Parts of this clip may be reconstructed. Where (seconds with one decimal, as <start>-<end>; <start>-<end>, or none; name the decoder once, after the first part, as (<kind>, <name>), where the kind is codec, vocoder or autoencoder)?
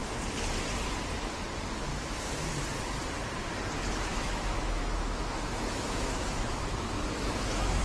1.9-2.5 (autoencoder, DAC-VAE); 4.1-7.8